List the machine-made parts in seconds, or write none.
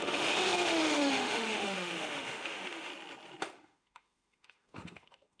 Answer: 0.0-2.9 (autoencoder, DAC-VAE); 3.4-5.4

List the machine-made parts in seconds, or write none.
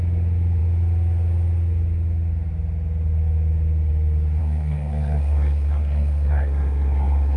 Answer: 4.4-7.4 (codec, SNAC)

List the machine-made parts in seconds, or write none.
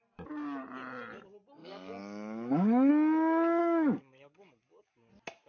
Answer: 1.6-2.9 (codec, DAC); 3.6-5.1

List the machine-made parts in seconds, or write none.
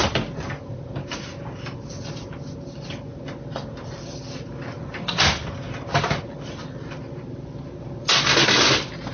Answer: none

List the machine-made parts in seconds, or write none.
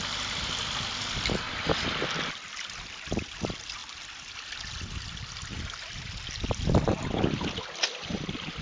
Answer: none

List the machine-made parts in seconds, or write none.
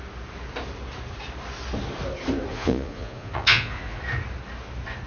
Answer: 2.5-4.0 (vocoder, Vocos)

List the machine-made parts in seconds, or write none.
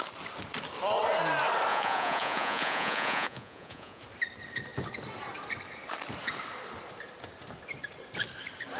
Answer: 1.7-4.0 (vocoder, Vocos)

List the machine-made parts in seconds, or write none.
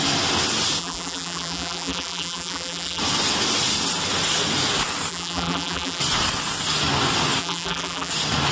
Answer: 0.8-3.0 (vocoder, BigVGAN v2); 5.1-6.0; 7.4-8.1